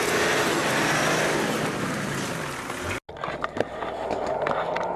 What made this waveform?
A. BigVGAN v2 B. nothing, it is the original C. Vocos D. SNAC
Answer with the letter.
B